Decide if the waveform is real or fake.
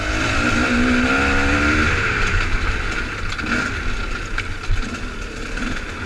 real